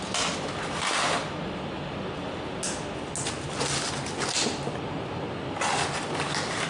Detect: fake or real real